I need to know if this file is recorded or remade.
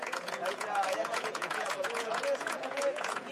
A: remade